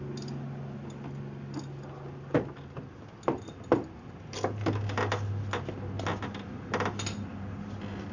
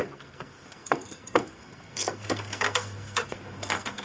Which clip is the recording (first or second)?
first